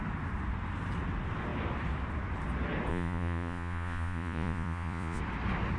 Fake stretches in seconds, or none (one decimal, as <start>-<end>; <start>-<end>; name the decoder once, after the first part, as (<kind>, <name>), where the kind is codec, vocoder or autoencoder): 2.9-5.2 (vocoder, Vocos)

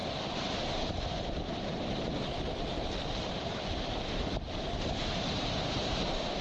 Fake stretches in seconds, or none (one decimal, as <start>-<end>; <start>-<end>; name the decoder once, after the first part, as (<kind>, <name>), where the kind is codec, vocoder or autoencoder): 0.0-3.6 (vocoder, BigVGAN v2)